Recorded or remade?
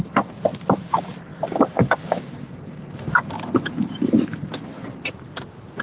remade